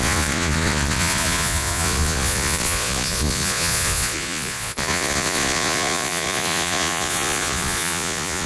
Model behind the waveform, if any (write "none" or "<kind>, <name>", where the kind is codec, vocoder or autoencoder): vocoder, Vocos